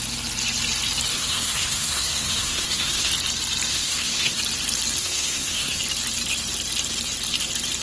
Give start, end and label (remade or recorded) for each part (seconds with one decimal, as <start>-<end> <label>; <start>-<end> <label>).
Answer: 0.0-1.1 recorded; 1.1-3.1 remade; 3.1-3.7 recorded; 3.7-4.4 remade; 4.4-5.0 recorded; 5.0-5.8 remade; 5.8-7.8 recorded